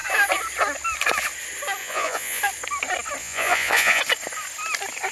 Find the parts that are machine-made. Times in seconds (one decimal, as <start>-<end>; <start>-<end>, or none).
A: 1.8-2.4; 3.2-4.0